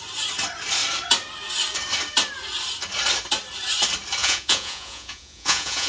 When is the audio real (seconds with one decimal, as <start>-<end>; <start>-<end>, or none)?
0.0-4.2